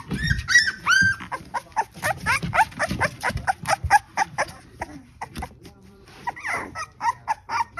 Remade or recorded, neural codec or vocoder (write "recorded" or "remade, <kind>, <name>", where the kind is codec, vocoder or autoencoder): remade, vocoder, BigVGAN v2